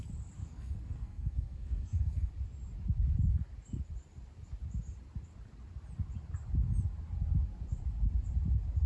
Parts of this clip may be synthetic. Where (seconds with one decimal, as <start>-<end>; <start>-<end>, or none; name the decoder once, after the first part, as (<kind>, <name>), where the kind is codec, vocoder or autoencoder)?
0.4-2.3 (codec, SNAC)